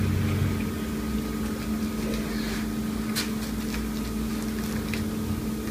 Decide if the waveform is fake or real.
real